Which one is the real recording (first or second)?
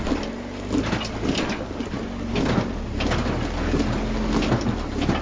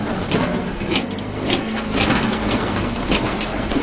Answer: first